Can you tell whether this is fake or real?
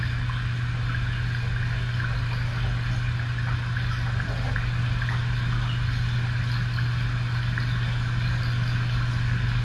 real